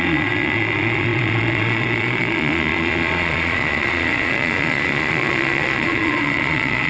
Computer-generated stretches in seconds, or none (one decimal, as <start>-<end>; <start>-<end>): 0.0-6.9